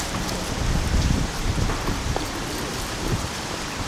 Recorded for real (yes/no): no